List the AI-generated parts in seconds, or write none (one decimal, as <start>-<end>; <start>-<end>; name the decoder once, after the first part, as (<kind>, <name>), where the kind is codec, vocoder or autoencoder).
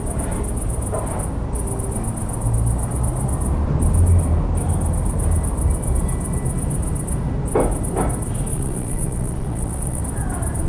8.5-10.0 (vocoder, Vocos)